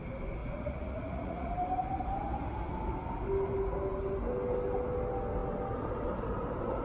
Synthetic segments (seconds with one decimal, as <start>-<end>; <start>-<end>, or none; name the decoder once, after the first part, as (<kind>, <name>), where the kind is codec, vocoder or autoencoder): 0.4-1.5 (vocoder, Vocos)